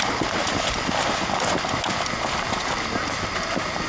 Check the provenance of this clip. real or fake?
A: real